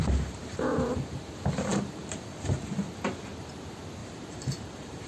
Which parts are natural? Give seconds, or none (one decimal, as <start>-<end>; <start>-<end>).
0.0-4.0